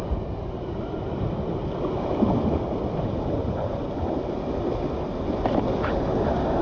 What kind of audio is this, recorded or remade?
recorded